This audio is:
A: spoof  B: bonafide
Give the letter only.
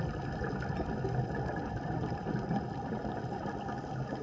B